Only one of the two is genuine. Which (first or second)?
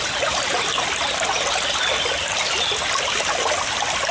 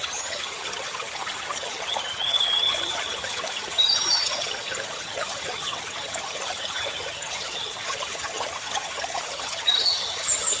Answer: first